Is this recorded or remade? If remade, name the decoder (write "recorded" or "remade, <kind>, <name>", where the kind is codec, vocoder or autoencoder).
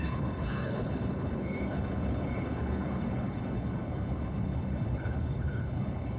remade, codec, HILCodec